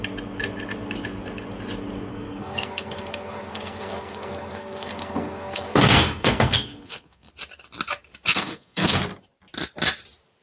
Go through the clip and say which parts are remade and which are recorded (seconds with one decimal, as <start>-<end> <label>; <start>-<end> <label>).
0.0-2.1 recorded; 2.1-7.3 remade; 7.3-8.3 recorded; 8.3-9.0 remade; 9.0-10.4 recorded